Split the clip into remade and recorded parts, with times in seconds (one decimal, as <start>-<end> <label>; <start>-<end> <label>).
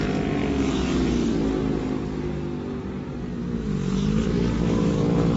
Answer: 0.0-5.4 recorded